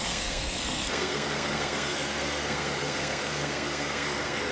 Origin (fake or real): fake